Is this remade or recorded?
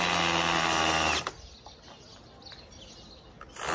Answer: recorded